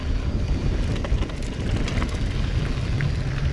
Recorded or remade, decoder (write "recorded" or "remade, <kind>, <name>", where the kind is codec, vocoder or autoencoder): recorded